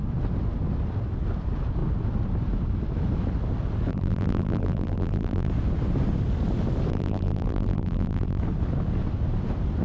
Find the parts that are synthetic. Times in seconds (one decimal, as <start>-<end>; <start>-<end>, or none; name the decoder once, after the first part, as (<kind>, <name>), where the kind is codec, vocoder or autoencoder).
3.9-5.5 (vocoder, BigVGAN v2); 6.9-8.4

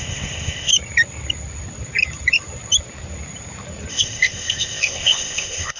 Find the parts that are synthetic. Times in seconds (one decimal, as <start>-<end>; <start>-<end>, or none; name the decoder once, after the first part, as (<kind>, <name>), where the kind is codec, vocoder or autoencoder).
0.0-0.7 (codec, ZipCodec); 3.9-5.8

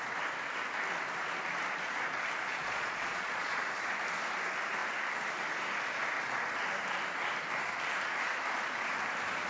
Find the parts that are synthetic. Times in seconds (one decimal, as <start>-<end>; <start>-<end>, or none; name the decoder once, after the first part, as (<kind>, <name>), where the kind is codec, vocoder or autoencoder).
2.5-3.6 (vocoder, Vocos)

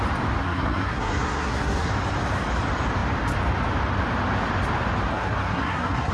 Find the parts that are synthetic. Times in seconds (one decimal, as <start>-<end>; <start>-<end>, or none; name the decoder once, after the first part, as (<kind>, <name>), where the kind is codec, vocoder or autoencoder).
0.4-1.9 (codec, SNAC); 5.1-6.1

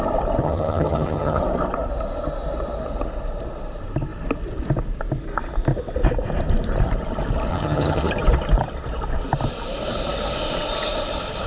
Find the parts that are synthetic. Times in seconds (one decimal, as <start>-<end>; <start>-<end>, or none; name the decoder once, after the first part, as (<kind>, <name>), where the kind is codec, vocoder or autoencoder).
0.4-1.4 (vocoder, HiFi-GAN); 7.5-8.1

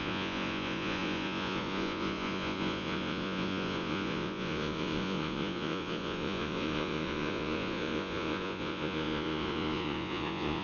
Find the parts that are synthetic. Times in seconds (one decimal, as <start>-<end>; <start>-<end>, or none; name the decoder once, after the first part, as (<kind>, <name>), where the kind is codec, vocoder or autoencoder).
0.0-10.6 (vocoder, Vocos)

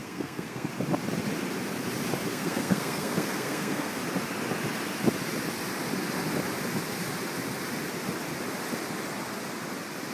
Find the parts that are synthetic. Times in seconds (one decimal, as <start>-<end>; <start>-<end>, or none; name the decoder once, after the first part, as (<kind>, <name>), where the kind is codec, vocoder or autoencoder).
0.0-0.7 (codec, SNAC); 2.3-4.0